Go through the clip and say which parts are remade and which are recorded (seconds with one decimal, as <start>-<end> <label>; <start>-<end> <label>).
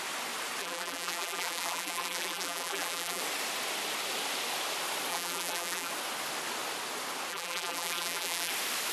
0.0-0.6 recorded; 0.6-3.2 remade; 3.2-5.1 recorded; 5.1-5.9 remade; 5.9-7.3 recorded; 7.3-8.5 remade; 8.5-8.9 recorded